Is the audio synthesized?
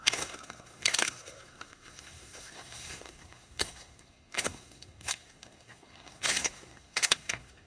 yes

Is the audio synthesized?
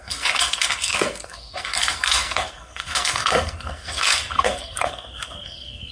yes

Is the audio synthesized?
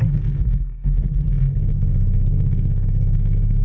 yes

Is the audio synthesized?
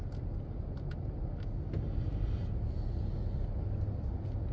no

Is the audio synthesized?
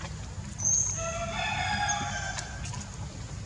no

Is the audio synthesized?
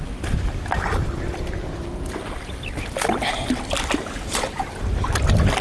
no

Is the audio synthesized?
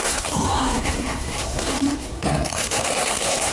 yes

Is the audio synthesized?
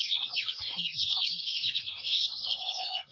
yes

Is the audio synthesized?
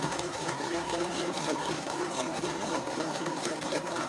yes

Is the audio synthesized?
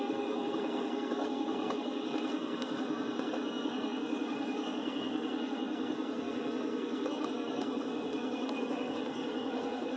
yes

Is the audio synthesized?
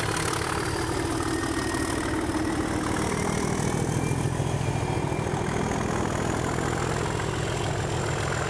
no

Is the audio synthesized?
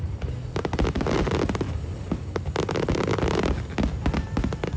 no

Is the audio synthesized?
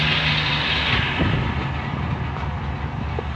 no